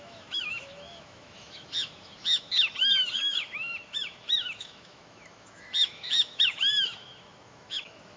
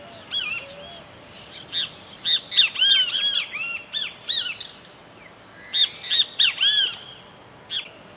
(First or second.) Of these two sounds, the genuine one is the second